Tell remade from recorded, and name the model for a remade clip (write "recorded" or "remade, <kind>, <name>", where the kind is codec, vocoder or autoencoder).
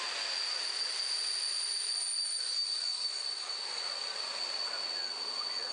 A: recorded